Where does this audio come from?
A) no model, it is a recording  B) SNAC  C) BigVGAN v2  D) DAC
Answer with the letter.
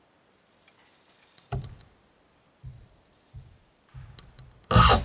A